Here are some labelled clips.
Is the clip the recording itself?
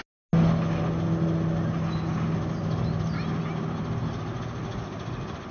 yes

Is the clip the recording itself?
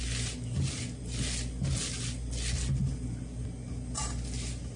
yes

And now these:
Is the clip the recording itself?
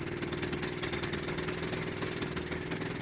yes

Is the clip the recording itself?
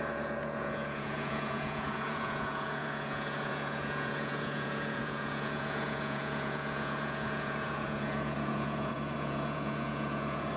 no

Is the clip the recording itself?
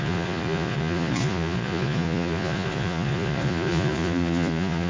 no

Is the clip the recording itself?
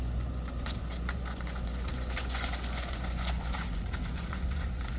no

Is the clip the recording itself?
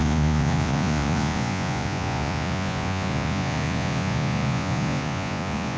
no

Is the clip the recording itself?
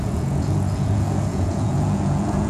no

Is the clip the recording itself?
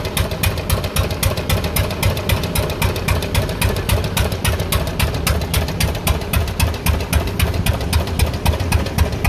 yes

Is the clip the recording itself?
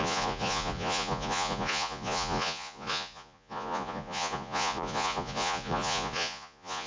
no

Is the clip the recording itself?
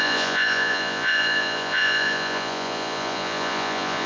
no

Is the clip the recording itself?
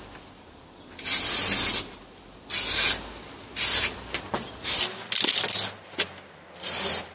yes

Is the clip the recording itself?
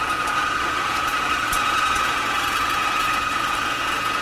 no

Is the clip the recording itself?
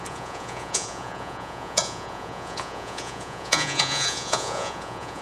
no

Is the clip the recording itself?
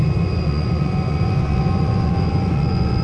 no